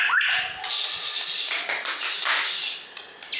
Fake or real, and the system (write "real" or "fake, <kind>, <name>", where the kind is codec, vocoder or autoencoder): real